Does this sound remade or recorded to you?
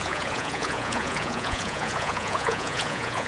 remade